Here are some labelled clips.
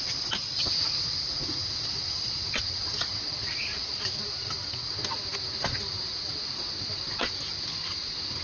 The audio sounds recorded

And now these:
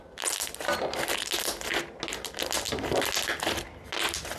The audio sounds recorded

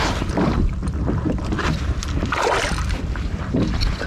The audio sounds remade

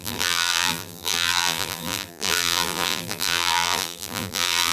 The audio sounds remade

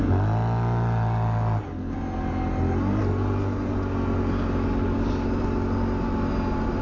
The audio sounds recorded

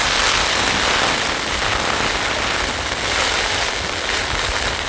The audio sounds recorded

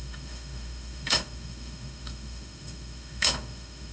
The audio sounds remade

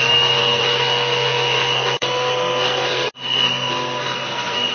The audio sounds remade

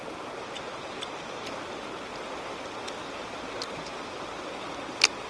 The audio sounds recorded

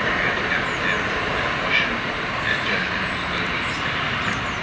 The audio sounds recorded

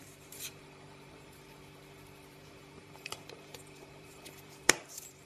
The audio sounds remade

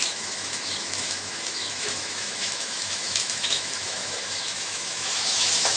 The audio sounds remade